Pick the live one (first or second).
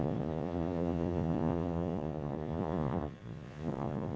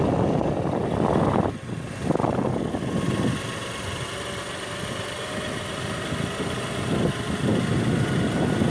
second